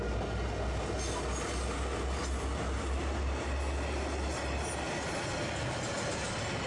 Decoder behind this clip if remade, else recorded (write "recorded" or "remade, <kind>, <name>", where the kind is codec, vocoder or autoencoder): recorded